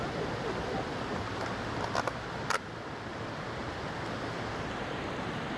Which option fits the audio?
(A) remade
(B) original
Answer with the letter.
B